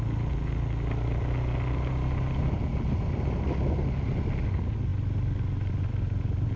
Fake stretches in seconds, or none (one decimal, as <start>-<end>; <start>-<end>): none